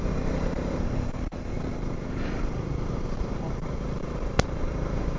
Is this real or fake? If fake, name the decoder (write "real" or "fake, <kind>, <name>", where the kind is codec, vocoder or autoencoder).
fake, vocoder, BigVGAN v2